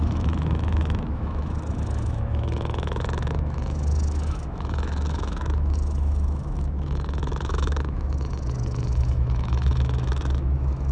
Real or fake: fake